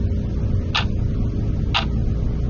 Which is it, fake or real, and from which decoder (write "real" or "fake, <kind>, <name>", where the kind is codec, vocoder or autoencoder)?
real